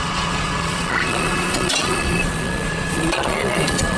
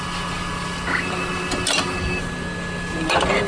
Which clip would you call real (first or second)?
second